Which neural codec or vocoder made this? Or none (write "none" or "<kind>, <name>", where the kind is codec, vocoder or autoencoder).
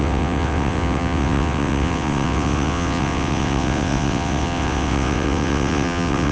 vocoder, WaveNeXt